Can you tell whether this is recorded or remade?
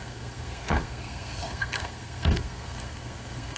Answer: remade